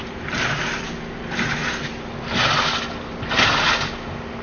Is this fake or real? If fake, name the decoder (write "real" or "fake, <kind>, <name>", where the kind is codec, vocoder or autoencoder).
real